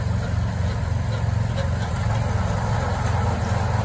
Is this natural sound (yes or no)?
yes